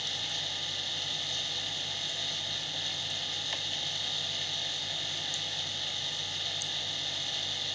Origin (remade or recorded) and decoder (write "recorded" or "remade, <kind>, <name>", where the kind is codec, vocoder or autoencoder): recorded